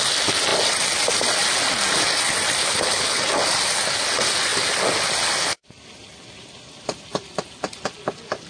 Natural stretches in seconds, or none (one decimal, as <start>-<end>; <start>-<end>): 0.0-2.6; 3.2-8.5